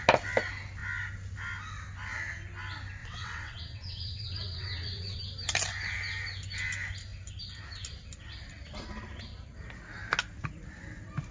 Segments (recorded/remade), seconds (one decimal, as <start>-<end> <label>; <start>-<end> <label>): 0.0-3.0 recorded; 3.0-5.2 remade; 5.2-11.3 recorded